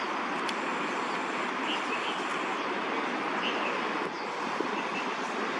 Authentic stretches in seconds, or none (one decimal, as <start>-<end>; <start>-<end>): 0.0-5.6